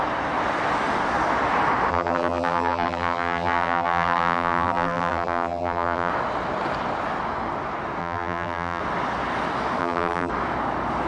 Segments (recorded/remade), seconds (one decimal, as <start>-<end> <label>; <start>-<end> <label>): 0.0-1.9 recorded; 1.9-6.1 remade; 6.1-8.0 recorded; 8.0-8.8 remade; 8.8-9.8 recorded; 9.8-10.3 remade; 10.3-11.1 recorded